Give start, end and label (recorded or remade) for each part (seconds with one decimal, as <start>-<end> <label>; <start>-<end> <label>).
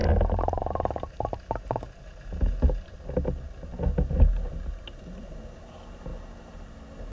0.0-7.1 recorded